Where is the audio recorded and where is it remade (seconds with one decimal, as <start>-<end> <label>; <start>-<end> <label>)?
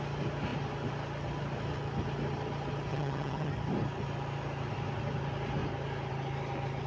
0.0-2.9 recorded; 2.9-3.5 remade; 3.5-6.9 recorded